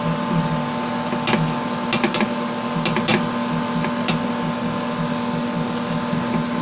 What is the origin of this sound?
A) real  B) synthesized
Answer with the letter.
A